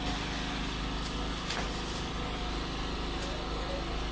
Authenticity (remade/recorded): recorded